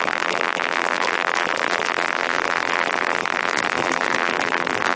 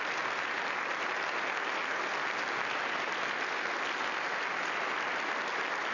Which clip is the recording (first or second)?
second